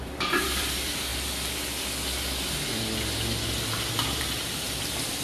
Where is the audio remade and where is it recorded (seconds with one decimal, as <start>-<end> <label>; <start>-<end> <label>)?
0.0-1.1 remade; 1.1-4.2 recorded; 4.2-5.2 remade